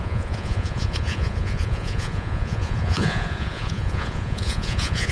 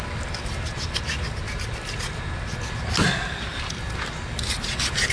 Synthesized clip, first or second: first